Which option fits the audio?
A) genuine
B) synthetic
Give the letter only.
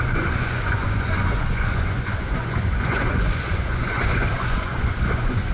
B